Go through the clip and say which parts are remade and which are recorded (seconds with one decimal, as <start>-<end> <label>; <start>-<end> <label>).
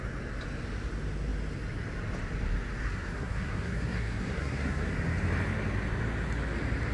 0.0-2.8 recorded; 2.8-4.9 remade; 4.9-6.9 recorded